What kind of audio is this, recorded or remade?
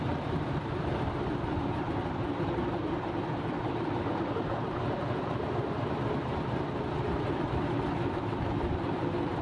remade